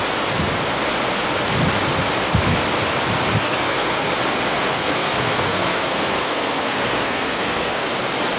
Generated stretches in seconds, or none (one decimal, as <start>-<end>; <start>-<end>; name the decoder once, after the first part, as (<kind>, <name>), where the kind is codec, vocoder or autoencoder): 3.4-4.1 (codec, SNAC); 4.6-7.9